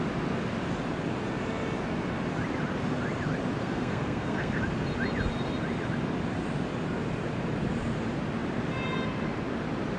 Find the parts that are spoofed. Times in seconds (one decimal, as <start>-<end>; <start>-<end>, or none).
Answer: 3.6-4.6

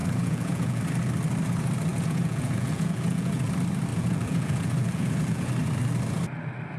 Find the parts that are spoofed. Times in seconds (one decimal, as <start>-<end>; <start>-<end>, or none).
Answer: 0.0-0.8; 1.9-3.5; 3.9-5.5

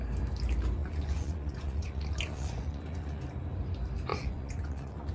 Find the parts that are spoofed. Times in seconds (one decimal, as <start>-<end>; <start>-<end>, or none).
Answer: 0.8-3.2; 4.1-5.1

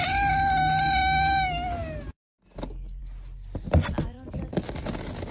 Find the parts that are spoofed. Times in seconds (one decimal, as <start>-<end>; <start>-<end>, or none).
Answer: none

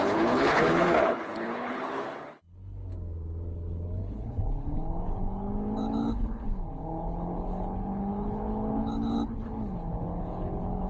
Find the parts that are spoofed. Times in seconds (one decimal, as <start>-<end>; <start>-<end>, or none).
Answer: 0.0-2.9; 3.5-10.9

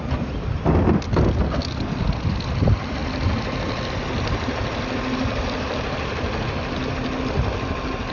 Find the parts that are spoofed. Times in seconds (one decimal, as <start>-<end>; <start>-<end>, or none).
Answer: none

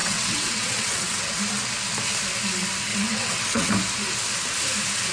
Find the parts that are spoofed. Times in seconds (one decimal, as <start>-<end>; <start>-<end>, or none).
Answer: 0.0-1.4; 2.9-3.7